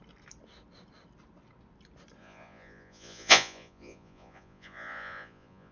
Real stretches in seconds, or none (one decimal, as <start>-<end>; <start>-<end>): 0.0-2.2